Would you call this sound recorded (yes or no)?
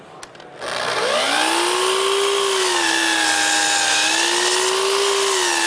yes